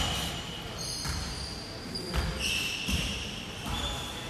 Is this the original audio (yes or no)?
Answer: yes